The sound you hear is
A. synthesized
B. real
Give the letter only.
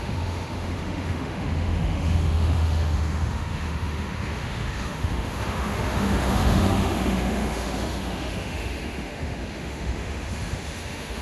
A